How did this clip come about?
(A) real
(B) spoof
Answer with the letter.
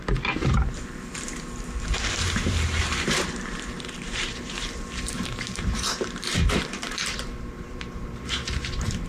B